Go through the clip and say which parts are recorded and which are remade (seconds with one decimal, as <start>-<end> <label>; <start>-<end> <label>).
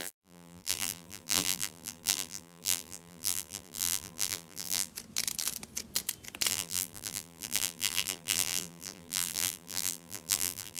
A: 0.0-4.9 remade; 4.9-6.5 recorded; 6.5-10.8 remade